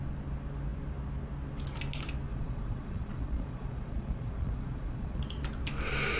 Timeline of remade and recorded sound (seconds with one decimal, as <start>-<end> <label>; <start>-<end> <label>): 0.0-2.3 recorded; 2.3-5.2 remade; 5.2-6.2 recorded